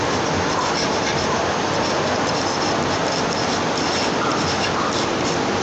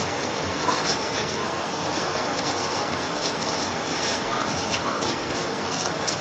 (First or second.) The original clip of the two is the first